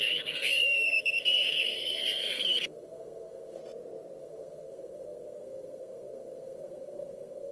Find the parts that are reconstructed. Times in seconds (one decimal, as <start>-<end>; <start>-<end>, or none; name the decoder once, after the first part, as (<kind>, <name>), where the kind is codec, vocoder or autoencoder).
0.0-3.6 (codec, SNAC); 4.2-7.5